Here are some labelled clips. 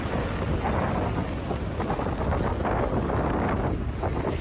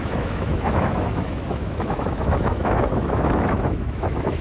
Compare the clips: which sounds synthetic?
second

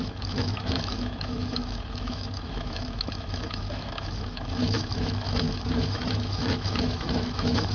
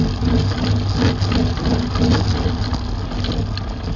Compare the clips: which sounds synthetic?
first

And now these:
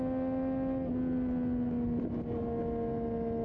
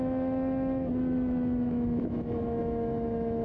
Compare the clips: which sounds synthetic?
second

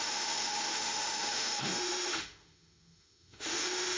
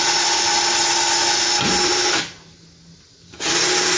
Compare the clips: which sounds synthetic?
first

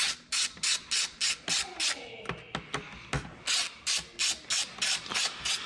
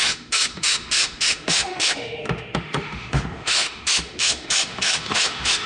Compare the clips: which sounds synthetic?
second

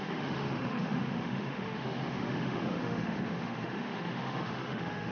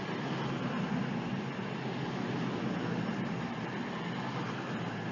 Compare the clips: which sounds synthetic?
first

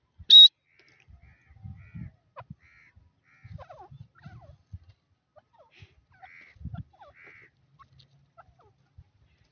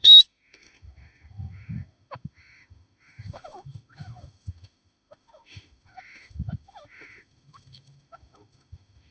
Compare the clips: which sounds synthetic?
second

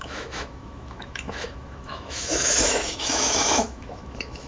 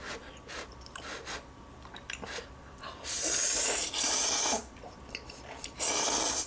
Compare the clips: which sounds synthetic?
first